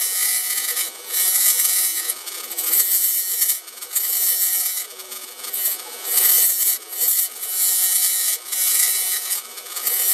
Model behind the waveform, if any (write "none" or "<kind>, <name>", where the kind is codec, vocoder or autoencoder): vocoder, Vocos